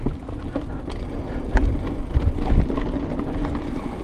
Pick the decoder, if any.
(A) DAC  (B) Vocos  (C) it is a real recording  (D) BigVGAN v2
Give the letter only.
C